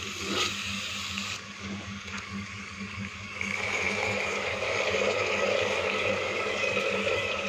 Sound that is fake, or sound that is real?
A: fake